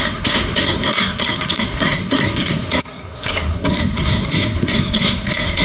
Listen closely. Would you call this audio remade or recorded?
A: remade